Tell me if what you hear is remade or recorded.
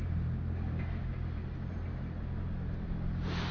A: recorded